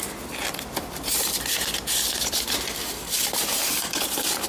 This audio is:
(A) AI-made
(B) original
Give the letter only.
A